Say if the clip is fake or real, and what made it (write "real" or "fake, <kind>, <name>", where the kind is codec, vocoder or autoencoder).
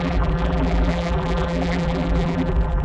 fake, vocoder, BigVGAN v2